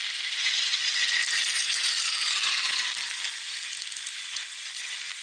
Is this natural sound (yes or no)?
yes